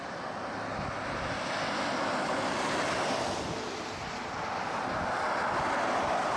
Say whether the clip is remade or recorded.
recorded